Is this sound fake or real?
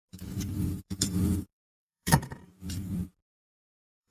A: fake